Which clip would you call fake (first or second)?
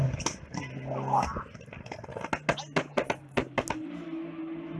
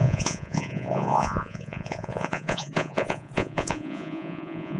second